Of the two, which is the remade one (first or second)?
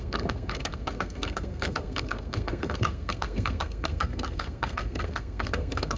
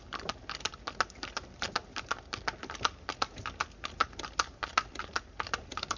first